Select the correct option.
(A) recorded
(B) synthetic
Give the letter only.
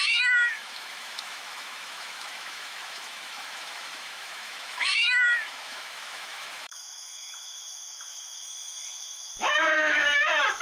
B